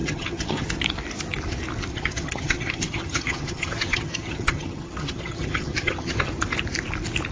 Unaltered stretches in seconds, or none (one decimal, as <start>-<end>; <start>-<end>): 0.7-1.9; 6.3-7.3